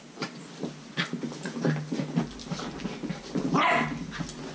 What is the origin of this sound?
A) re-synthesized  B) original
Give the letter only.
B